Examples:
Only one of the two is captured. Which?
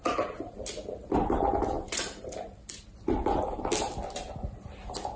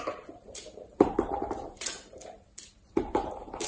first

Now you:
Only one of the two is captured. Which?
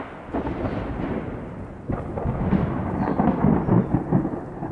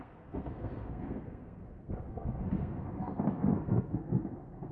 first